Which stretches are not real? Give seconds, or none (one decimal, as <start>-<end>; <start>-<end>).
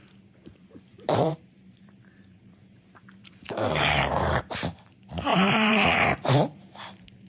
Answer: 0.4-4.5; 5.3-7.3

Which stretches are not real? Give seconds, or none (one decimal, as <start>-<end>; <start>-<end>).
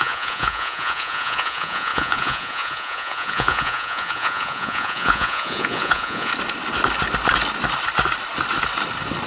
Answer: 0.0-6.3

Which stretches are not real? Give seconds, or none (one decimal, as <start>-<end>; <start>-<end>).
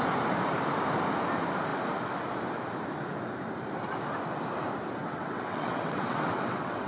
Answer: 5.0-6.9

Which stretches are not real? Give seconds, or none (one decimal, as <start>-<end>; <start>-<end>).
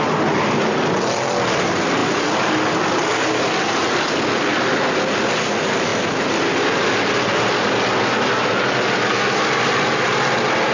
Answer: none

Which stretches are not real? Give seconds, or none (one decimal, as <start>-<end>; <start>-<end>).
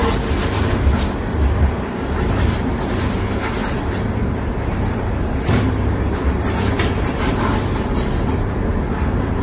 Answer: 3.6-7.4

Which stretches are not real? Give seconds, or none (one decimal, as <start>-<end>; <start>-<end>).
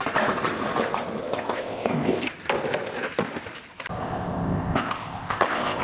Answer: 1.2-2.3; 4.0-5.8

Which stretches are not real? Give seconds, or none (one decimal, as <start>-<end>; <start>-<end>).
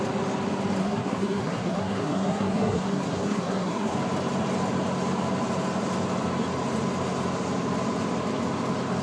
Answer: 0.8-3.9